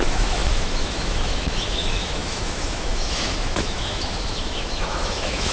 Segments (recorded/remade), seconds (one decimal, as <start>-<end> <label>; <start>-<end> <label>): 0.0-5.5 remade